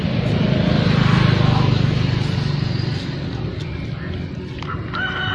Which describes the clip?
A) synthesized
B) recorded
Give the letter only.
B